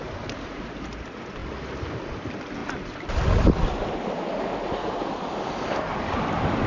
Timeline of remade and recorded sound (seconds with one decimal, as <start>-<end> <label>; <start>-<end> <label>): 0.0-6.7 recorded